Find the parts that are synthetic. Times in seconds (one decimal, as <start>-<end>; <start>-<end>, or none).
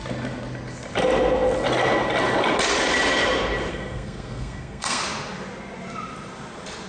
3.7-5.0